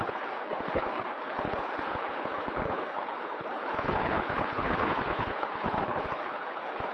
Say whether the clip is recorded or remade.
remade